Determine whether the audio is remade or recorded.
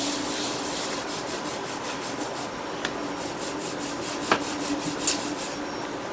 recorded